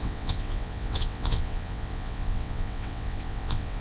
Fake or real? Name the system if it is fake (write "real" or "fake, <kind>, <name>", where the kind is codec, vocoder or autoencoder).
fake, vocoder, WaveNeXt